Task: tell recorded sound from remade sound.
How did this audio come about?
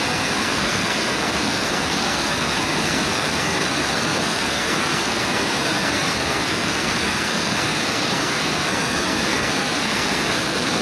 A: remade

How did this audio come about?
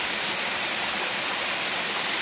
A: recorded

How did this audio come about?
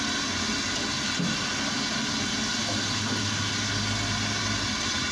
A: recorded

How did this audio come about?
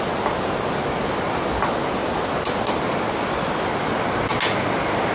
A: recorded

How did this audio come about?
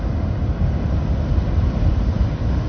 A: recorded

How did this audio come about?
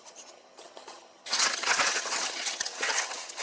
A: remade